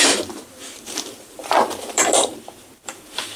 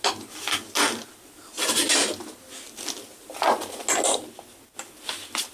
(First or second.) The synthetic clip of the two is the first